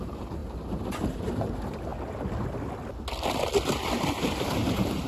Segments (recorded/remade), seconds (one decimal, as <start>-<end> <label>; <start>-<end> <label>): 0.0-1.9 remade; 1.9-4.2 recorded; 4.2-5.1 remade